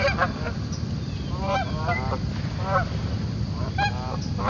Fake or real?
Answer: real